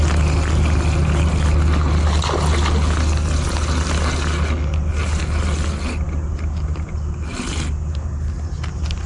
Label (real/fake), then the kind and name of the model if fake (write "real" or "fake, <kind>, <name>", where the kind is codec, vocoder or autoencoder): real